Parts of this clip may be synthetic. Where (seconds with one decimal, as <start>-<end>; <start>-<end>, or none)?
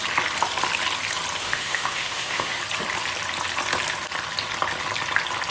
1.4-2.6